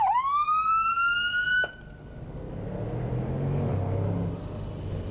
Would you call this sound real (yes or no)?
yes